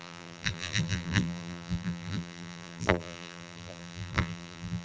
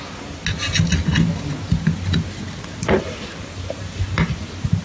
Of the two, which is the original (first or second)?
second